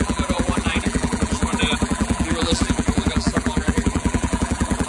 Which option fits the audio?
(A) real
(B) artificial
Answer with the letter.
B